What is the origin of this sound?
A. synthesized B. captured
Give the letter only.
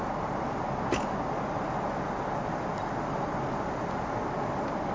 B